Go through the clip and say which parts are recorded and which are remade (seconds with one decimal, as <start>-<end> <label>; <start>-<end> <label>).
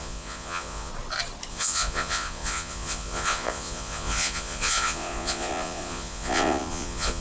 0.0-0.9 remade; 0.9-1.5 recorded; 1.5-7.2 remade